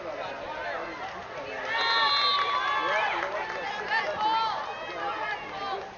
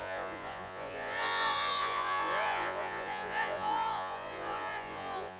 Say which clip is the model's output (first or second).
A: second